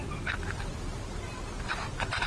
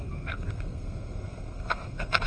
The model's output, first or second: second